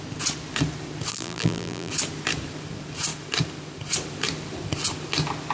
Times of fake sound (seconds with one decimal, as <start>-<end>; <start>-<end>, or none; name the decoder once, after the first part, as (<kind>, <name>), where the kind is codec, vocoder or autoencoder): 1.1-1.9 (vocoder, BigVGAN v2)